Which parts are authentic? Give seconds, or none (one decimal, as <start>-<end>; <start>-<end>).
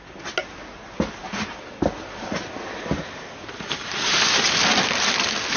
0.0-5.6